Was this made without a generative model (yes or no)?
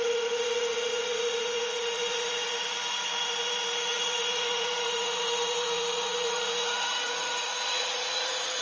no